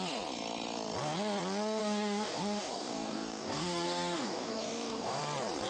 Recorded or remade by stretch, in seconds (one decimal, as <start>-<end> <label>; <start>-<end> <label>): 0.0-1.8 recorded; 1.8-5.2 remade; 5.2-5.7 recorded